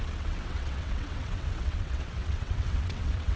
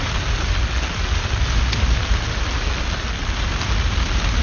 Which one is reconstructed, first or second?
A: first